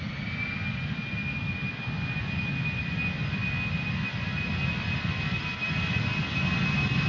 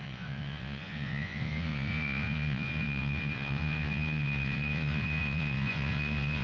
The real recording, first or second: first